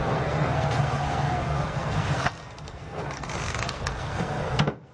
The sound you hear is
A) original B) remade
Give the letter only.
B